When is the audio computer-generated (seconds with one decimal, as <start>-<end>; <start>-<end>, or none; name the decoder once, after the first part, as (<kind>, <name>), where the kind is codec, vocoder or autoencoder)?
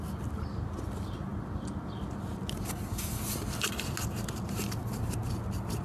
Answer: none